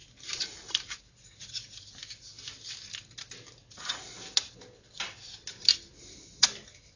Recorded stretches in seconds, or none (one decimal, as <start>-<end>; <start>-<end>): 0.0-7.0